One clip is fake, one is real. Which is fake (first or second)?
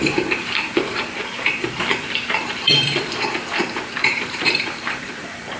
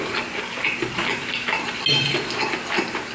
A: first